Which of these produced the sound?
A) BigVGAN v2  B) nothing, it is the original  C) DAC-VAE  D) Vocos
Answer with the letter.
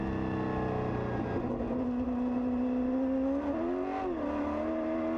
B